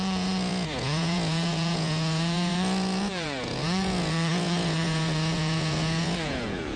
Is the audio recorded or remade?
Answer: remade